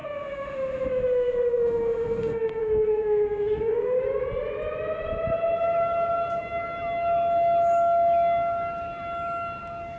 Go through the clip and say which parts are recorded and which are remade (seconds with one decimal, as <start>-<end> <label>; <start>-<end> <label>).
0.0-4.0 remade; 4.0-10.0 recorded